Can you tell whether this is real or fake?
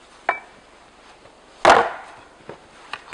real